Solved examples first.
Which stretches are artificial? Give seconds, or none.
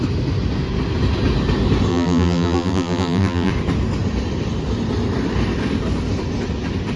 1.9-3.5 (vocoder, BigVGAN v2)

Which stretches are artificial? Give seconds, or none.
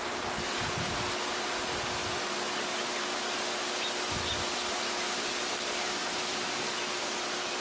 6.0-6.6 (vocoder, BigVGAN v2)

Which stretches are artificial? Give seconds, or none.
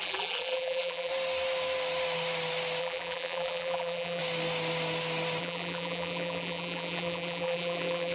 0.0-1.1 (vocoder, BigVGAN v2); 2.8-4.2; 5.4-8.1